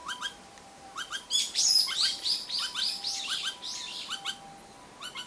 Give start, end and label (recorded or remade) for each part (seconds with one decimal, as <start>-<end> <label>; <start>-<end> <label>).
0.0-3.2 remade; 3.2-5.3 recorded